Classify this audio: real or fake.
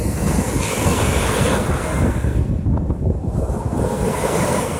fake